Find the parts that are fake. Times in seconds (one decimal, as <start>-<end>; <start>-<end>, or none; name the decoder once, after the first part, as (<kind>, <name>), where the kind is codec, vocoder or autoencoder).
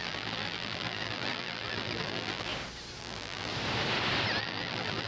0.0-2.5 (vocoder, BigVGAN v2); 3.0-3.5; 4.4-5.1